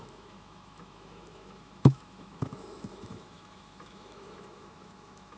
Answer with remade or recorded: remade